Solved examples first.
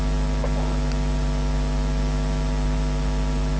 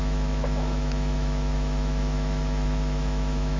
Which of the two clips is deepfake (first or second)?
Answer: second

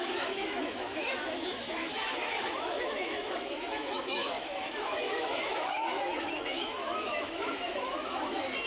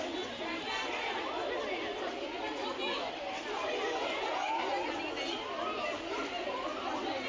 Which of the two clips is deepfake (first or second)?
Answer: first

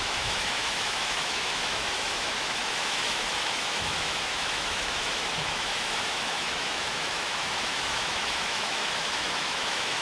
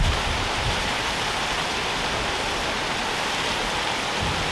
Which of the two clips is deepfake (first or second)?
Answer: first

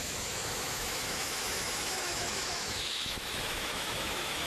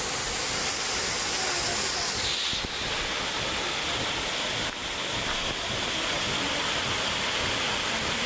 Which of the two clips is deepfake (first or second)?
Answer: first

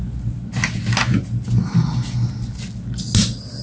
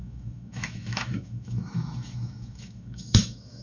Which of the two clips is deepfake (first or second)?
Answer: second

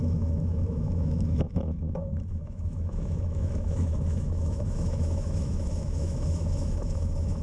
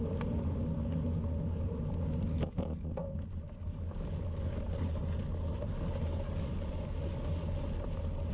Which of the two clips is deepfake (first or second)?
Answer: first